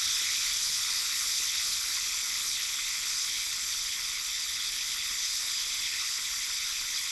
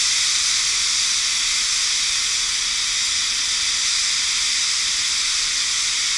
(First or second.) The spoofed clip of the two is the first